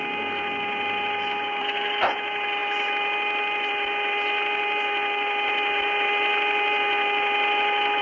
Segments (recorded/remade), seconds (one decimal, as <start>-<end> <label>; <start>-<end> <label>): 0.0-8.0 recorded